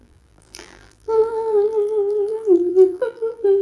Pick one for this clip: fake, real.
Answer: fake